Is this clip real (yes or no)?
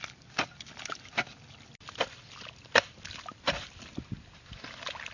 yes